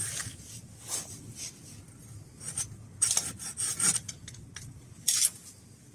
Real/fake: real